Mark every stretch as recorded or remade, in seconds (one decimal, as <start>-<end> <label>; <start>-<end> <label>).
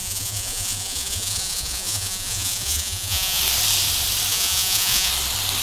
0.0-3.4 remade; 3.4-4.3 recorded; 4.3-5.1 remade; 5.1-5.6 recorded